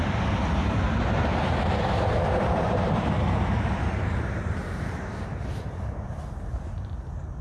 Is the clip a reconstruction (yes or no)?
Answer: yes